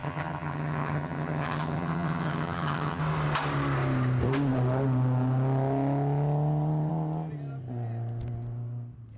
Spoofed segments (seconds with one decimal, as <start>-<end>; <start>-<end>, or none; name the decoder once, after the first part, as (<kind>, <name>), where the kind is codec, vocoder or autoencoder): 0.0-3.0 (vocoder, HiFi-GAN)